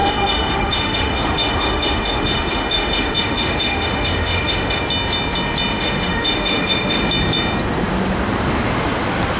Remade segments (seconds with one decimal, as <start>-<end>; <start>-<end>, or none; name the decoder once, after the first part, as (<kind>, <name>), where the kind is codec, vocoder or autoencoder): 0.0-4.8 (autoencoder, DAC-VAE); 5.7-7.0